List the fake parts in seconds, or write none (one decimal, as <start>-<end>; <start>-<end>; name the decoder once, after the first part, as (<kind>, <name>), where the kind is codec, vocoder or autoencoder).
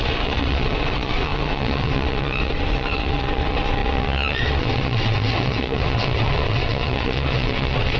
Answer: 0.0-8.0 (vocoder, WaveNeXt)